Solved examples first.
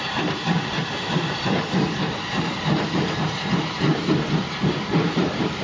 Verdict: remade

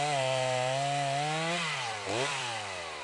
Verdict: remade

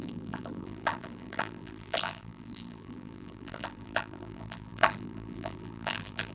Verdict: remade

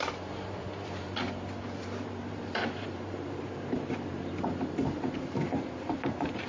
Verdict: remade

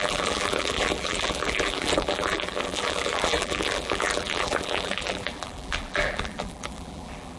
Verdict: remade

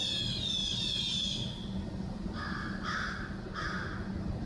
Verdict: recorded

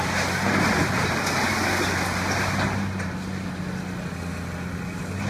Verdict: recorded